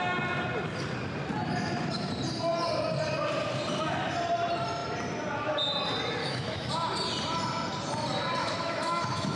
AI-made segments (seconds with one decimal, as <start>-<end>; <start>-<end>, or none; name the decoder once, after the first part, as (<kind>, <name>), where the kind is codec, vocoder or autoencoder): 6.2-6.7 (autoencoder, DAC-VAE); 8.4-9.4

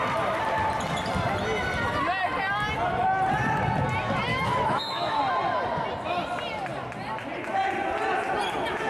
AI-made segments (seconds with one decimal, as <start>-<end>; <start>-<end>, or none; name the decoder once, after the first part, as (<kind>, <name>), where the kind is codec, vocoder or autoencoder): 4.3-5.2 (autoencoder, DAC-VAE)

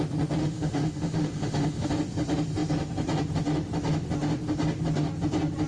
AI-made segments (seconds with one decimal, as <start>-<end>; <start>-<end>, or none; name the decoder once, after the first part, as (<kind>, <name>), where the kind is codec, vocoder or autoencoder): 0.4-1.9 (autoencoder, DAC-VAE)

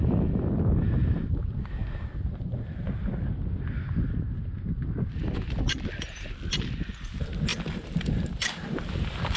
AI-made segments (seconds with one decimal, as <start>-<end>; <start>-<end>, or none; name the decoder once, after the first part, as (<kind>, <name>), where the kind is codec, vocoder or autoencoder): none

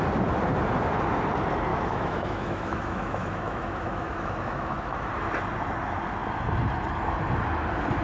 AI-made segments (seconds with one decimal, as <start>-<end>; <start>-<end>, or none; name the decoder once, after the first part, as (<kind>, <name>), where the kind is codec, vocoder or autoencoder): 1.7-5.1 (autoencoder, DAC-VAE)

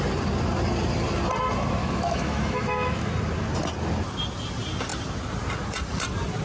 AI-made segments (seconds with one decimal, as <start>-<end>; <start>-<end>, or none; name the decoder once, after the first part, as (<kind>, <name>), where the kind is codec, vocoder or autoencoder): 1.8-3.1 (autoencoder, DAC-VAE)

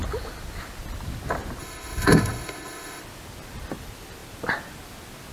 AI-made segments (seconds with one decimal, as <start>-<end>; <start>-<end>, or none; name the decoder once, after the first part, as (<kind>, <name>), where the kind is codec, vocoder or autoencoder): 1.6-3.0 (autoencoder, DAC-VAE)

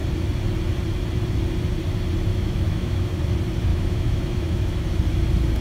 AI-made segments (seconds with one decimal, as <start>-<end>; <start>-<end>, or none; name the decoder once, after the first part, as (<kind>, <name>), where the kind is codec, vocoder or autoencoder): 2.3-3.2 (autoencoder, DAC-VAE); 3.7-5.0